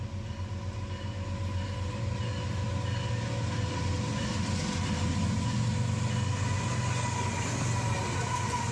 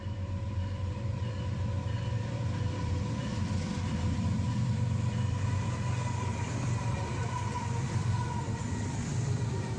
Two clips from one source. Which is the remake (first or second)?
second